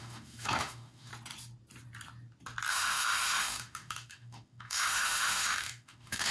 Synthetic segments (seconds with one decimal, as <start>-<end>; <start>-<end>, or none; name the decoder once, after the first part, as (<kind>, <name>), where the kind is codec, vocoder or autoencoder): 0.0-1.1 (autoencoder, DAC-VAE); 2.7-6.3